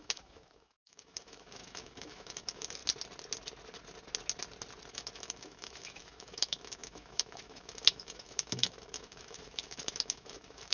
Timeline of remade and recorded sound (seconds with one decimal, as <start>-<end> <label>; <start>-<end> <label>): 0.0-2.8 remade; 2.8-4.9 recorded; 4.9-10.7 remade